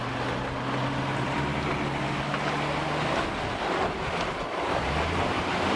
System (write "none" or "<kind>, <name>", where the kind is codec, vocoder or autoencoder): none